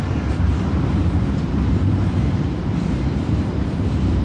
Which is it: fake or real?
fake